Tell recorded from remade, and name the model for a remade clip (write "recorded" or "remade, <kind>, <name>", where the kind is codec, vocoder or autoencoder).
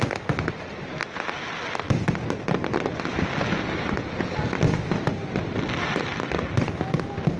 recorded